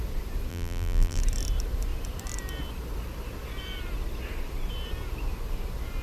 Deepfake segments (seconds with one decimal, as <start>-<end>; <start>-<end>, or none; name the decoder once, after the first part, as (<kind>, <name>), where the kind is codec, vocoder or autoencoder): 0.5-1.2 (vocoder, BigVGAN v2)